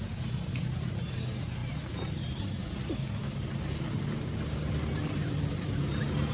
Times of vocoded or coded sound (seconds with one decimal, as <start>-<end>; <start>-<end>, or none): none